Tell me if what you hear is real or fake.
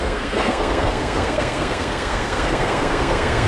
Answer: fake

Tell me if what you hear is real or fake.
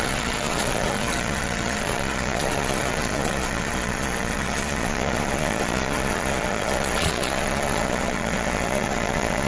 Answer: fake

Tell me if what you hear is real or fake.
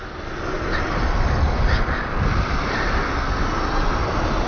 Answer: real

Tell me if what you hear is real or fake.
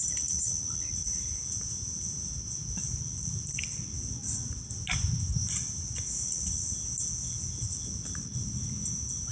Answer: real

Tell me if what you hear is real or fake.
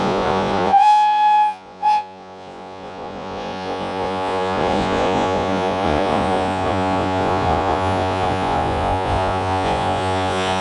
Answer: fake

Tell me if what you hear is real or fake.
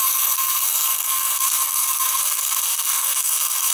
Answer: fake